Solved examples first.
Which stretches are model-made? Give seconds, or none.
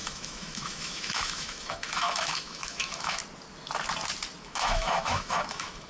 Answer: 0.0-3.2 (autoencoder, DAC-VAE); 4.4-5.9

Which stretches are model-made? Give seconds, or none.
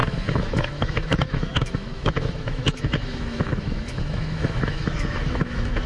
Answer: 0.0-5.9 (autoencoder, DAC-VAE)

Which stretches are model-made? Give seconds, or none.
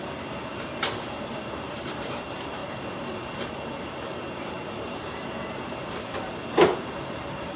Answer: 0.0-2.6 (vocoder, BigVGAN v2); 4.1-7.6